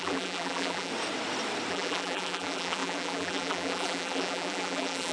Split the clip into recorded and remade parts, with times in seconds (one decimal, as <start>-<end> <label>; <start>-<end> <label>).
0.0-0.9 remade; 0.9-1.7 recorded; 1.7-5.1 remade